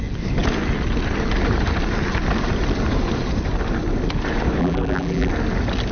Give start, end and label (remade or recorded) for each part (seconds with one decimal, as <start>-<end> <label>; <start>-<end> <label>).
0.0-4.6 recorded; 4.6-5.3 remade; 5.3-5.9 recorded